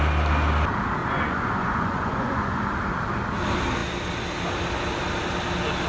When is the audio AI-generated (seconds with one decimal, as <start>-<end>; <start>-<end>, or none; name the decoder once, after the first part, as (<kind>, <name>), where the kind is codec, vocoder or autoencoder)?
1.0-2.6 (vocoder, Vocos)